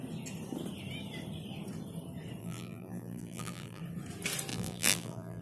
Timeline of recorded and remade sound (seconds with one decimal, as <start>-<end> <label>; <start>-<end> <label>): 0.0-2.4 recorded; 2.4-3.8 remade; 3.8-4.5 recorded; 4.5-5.4 remade